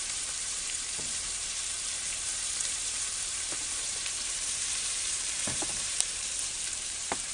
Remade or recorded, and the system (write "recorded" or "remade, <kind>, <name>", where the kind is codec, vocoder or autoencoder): remade, vocoder, BigVGAN v2